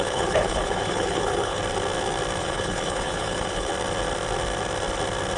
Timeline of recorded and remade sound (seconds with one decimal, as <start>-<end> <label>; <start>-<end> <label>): 0.0-1.6 remade; 1.6-2.4 recorded; 2.4-3.7 remade; 3.7-5.4 recorded